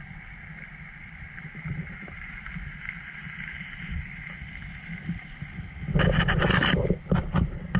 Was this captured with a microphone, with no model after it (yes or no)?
yes